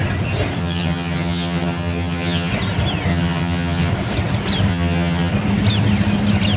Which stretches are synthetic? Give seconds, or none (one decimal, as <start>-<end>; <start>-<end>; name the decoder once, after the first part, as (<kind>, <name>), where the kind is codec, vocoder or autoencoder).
0.6-2.5 (vocoder, HiFi-GAN); 3.1-3.9; 4.7-5.3